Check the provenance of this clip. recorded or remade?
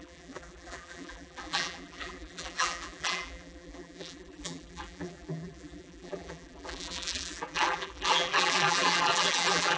remade